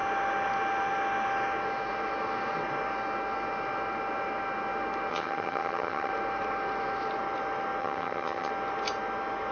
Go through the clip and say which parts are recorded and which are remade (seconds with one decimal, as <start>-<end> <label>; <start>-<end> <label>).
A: 0.0-5.1 recorded; 5.1-6.1 remade; 6.1-7.8 recorded; 7.8-8.5 remade; 8.5-9.5 recorded